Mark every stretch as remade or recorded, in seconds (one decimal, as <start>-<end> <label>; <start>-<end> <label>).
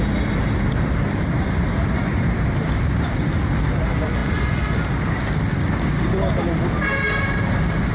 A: 0.0-0.4 recorded; 0.4-3.3 remade; 3.3-7.9 recorded